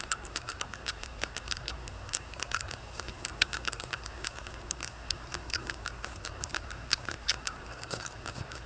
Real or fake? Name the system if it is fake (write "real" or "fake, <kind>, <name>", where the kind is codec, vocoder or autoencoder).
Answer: fake, codec, SNAC